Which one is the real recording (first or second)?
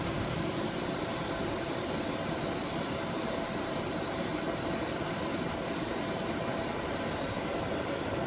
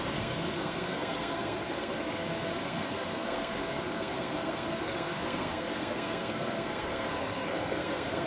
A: first